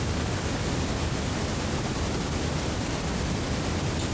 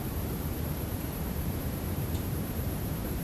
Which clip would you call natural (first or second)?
first